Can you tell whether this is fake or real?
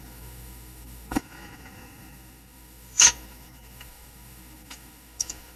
fake